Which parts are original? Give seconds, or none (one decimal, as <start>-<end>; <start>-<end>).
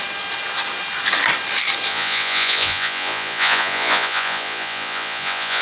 0.0-1.9